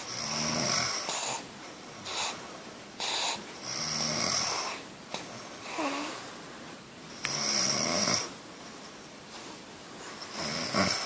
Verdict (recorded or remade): remade